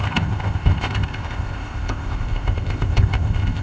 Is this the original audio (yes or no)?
no